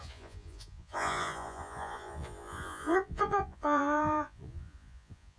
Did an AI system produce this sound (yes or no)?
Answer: yes